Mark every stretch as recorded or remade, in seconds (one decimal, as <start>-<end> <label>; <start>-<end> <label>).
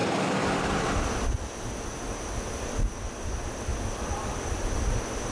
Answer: 0.0-3.7 recorded; 3.7-4.5 remade; 4.5-5.3 recorded